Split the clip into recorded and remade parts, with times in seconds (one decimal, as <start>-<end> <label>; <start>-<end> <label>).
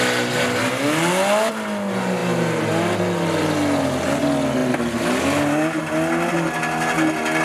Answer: 0.0-7.4 recorded